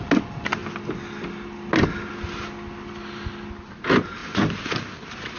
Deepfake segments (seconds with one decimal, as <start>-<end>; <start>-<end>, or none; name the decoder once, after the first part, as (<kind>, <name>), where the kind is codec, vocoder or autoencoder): none